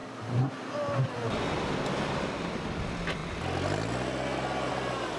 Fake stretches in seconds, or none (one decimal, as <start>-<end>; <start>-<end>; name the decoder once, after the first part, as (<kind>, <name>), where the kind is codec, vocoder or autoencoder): none